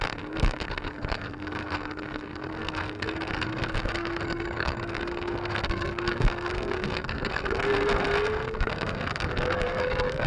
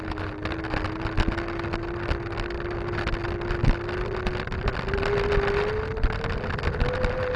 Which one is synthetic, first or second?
first